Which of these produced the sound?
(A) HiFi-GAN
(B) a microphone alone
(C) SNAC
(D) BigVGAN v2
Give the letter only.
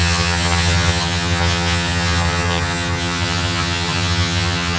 A